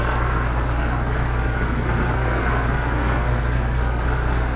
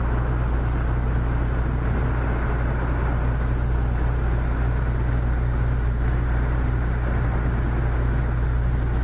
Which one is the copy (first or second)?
first